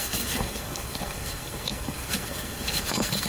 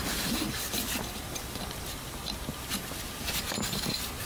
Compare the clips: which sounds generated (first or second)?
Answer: first